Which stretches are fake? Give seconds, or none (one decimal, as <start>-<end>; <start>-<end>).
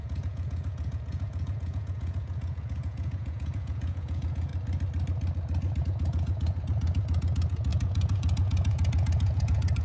0.0-4.5; 5.8-9.8